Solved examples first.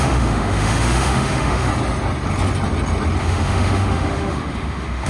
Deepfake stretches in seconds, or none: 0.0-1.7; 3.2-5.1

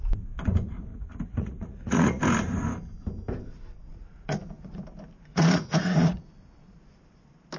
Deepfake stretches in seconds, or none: 0.9-2.2; 3.9-4.8; 5.3-6.2

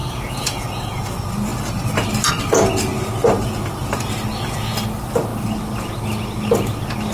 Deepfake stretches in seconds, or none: 0.0-1.1

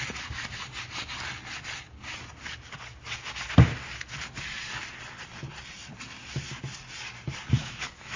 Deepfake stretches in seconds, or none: 7.6-8.2